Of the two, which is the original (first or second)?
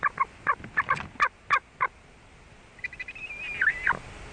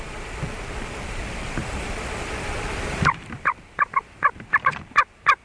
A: first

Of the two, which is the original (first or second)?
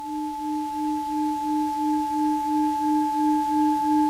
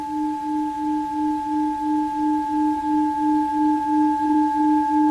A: second